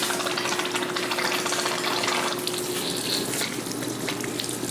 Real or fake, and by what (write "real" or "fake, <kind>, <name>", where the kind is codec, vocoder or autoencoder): real